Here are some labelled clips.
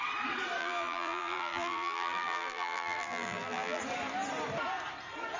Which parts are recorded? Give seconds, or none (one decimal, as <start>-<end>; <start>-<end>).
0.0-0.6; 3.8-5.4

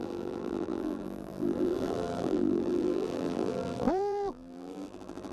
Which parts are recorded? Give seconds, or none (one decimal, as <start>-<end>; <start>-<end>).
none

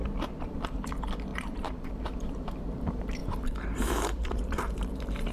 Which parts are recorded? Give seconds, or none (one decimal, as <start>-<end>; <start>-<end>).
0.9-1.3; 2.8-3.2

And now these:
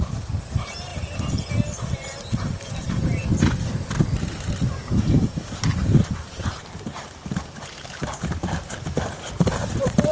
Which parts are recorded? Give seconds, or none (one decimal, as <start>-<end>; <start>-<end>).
0.9-2.8; 3.2-4.2